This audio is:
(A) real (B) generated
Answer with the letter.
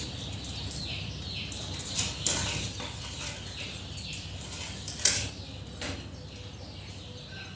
B